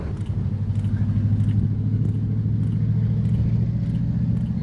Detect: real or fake real